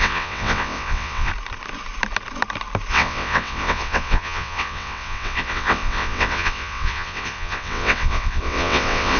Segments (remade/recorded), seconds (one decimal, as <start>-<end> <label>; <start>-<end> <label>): 0.0-1.3 remade; 1.3-2.9 recorded; 2.9-9.2 remade